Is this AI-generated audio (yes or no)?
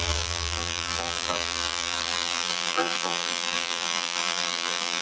yes